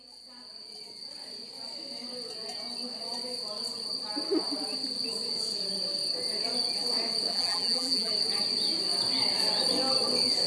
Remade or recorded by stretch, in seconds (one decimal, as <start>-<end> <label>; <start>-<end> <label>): 0.0-7.3 recorded; 7.3-8.1 remade; 8.1-10.5 recorded